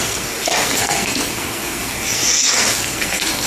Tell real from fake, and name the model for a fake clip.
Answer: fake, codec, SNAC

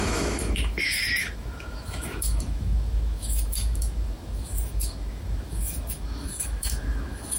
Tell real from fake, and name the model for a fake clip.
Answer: fake, autoencoder, DAC-VAE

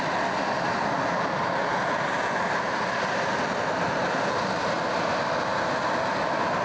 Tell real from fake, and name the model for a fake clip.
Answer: real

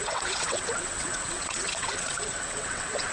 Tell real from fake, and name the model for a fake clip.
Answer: fake, vocoder, WaveNeXt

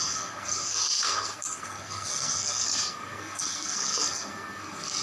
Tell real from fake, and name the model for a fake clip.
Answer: fake, codec, SNAC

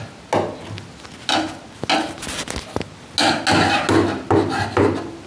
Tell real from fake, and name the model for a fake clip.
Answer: real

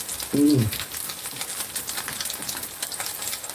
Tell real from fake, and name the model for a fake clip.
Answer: real